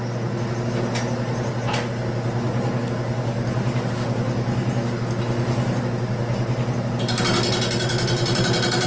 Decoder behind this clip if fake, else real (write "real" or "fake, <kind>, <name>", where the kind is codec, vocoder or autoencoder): real